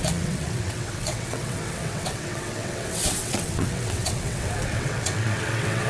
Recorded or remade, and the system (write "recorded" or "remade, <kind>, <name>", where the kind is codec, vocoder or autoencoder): remade, vocoder, WaveNeXt